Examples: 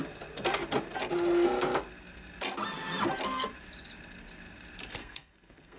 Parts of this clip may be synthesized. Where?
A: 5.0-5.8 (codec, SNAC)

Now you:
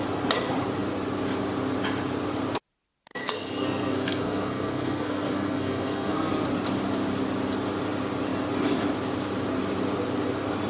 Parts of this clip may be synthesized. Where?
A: 3.2-6.3 (codec, SNAC)

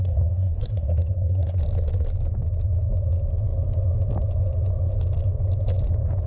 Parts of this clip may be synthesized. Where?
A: 0.0-1.6 (codec, SNAC)

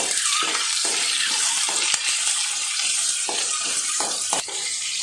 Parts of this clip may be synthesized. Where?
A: 0.0-5.0 (vocoder, BigVGAN v2)